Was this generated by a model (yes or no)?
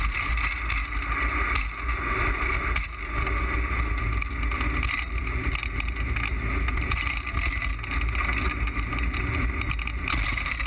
no